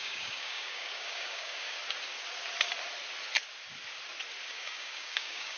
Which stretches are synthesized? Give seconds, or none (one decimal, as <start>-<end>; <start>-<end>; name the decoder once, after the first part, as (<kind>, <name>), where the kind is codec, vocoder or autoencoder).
0.0-1.8 (codec, DAC); 4.5-5.6